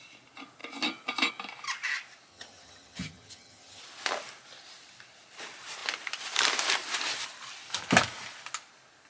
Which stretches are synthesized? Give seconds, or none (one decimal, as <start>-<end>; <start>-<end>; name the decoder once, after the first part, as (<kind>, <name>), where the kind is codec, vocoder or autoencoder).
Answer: 2.3-3.8 (vocoder, HiFi-GAN)